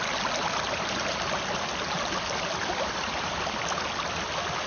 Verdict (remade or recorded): recorded